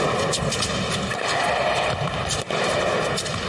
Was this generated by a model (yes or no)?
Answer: no